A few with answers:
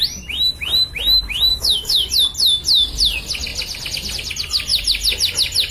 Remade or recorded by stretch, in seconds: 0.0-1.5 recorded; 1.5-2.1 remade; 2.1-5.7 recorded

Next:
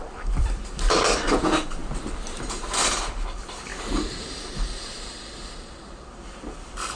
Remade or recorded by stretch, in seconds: 0.0-1.8 remade; 1.8-3.0 recorded; 3.0-7.0 remade

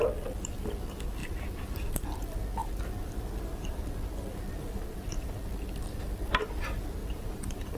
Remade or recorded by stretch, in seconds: 0.0-7.0 recorded; 7.0-7.8 remade